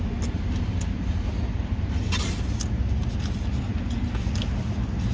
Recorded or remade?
recorded